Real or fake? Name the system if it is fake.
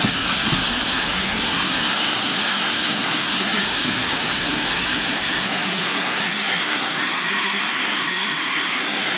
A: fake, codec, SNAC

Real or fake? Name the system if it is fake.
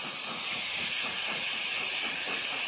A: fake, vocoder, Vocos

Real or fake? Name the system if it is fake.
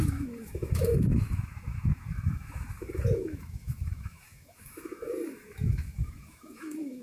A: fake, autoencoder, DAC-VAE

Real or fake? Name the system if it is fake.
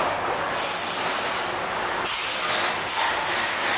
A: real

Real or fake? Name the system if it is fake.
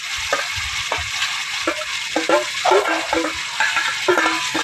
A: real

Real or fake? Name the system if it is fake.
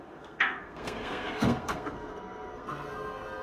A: fake, codec, SNAC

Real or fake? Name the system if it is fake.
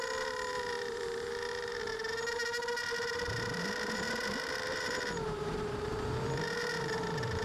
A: fake, vocoder, BigVGAN v2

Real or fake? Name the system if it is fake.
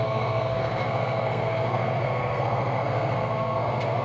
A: fake, codec, SNAC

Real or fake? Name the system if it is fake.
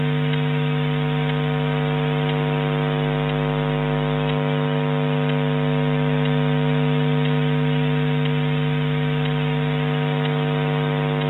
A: real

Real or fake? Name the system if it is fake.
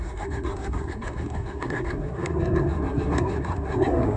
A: fake, codec, SNAC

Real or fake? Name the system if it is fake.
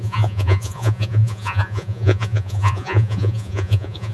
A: fake, vocoder, Vocos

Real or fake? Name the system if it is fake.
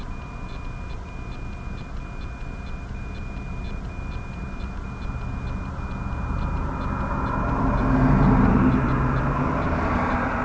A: real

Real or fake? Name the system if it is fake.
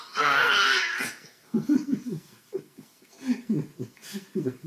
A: fake, codec, SNAC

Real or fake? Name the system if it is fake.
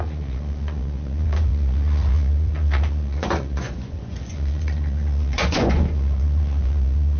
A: fake, vocoder, Vocos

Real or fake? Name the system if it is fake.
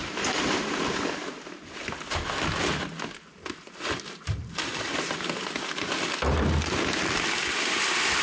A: real